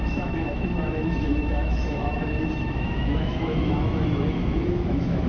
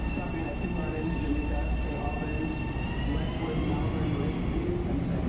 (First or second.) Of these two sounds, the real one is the second